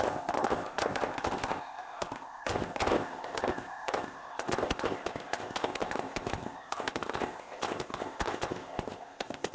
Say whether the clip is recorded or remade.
remade